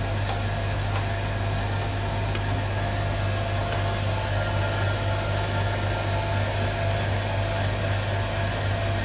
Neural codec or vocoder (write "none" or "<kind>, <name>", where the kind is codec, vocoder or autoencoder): none